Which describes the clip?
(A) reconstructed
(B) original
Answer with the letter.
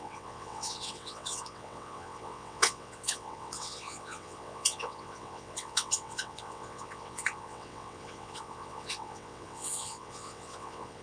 A